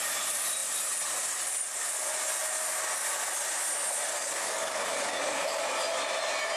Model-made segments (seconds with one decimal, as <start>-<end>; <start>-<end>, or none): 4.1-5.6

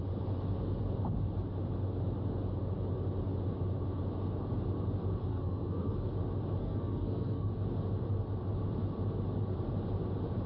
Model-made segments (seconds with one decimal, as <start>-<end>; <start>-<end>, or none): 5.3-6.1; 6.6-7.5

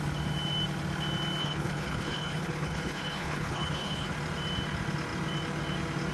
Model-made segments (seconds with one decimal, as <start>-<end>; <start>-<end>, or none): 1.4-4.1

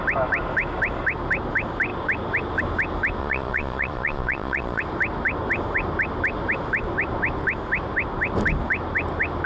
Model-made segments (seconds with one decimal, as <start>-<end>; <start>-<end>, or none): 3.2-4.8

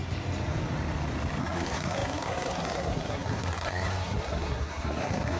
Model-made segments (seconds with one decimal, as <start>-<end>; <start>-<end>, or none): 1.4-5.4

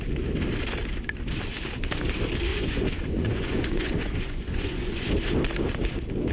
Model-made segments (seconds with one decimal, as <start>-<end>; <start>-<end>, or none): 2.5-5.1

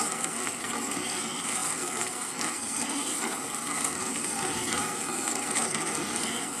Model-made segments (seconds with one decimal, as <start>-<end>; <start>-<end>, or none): 0.0-6.6